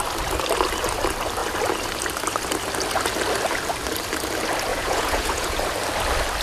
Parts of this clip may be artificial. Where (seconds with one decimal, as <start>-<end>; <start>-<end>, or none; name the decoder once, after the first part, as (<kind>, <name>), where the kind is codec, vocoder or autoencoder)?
4.7-5.6 (vocoder, Vocos)